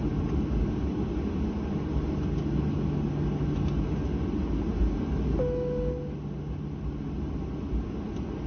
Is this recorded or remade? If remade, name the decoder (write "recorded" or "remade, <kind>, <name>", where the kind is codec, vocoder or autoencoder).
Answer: recorded